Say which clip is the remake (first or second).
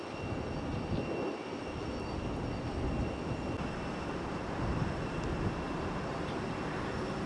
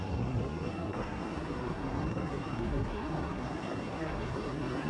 second